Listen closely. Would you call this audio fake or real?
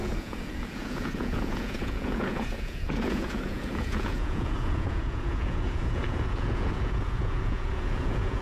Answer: fake